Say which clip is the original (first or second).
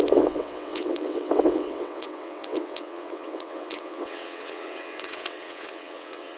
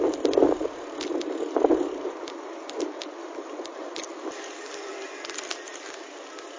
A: second